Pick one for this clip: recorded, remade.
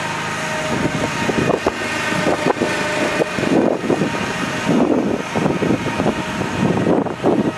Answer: recorded